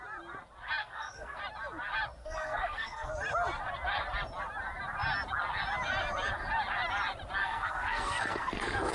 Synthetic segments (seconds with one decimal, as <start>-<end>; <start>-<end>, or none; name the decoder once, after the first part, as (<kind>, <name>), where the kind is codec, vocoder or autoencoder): 0.8-1.4 (codec, SNAC); 2.2-3.1; 7.4-8.9